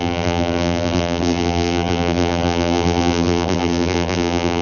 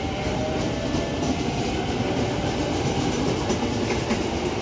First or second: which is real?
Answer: second